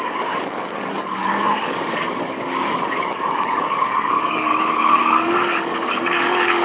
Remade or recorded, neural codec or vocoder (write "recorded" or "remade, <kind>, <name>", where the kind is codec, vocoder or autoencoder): remade, codec, DAC